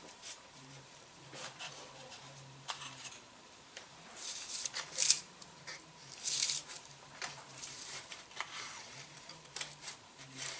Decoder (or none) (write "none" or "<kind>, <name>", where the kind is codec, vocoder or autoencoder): vocoder, BigVGAN v2